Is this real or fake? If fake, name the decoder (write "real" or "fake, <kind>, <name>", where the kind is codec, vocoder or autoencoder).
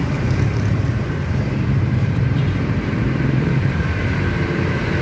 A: fake, vocoder, BigVGAN v2